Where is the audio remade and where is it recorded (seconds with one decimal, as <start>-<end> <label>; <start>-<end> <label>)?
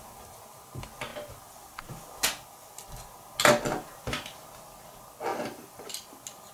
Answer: 0.0-5.3 recorded; 5.3-5.9 remade; 5.9-6.5 recorded